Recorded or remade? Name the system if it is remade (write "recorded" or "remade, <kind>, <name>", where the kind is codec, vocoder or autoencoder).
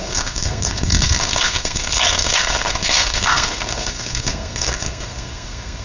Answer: remade, codec, SNAC